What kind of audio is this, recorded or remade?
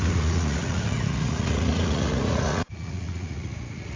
remade